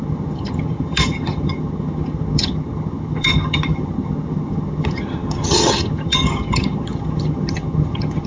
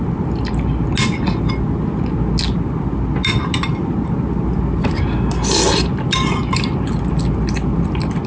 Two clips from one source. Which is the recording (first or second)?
second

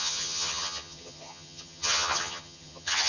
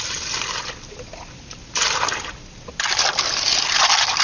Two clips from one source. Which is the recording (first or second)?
second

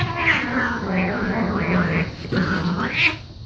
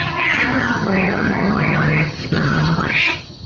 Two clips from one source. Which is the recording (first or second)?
first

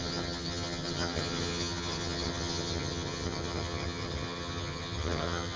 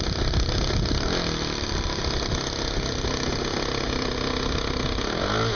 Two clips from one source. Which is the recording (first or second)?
second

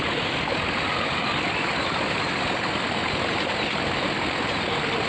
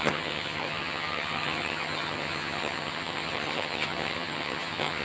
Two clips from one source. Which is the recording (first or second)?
first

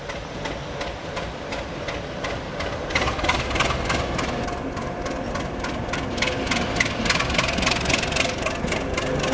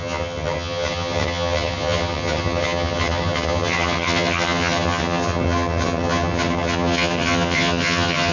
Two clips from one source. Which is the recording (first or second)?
first